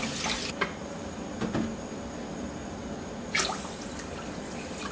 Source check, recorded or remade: recorded